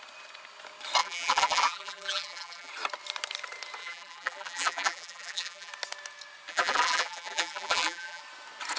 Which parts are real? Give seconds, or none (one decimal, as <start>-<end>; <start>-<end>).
0.0-1.0; 2.7-3.8; 5.7-6.5; 8.2-8.8